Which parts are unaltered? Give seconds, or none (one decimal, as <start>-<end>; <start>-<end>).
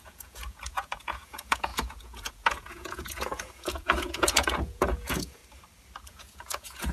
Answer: 5.4-6.1